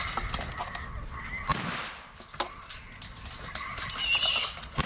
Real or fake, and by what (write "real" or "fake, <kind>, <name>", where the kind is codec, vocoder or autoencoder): real